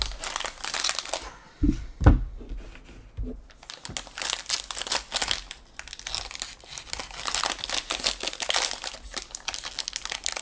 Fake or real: real